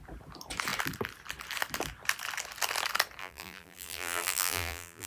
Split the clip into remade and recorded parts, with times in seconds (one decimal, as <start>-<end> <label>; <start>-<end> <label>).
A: 0.0-3.2 recorded; 3.2-5.1 remade